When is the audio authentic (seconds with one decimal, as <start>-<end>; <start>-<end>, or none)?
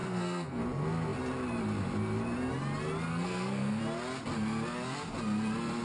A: 0.6-3.1; 3.8-5.8